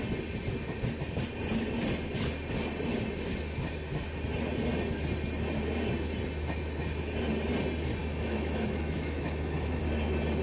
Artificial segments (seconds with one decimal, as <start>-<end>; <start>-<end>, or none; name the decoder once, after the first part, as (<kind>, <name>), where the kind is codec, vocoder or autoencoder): 8.0-9.8 (autoencoder, DAC-VAE)